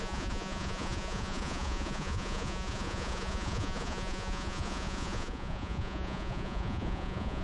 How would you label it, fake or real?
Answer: fake